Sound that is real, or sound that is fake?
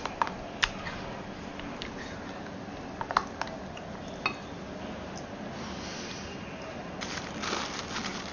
real